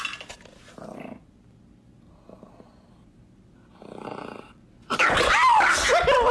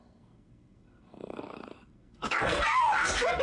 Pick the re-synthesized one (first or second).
second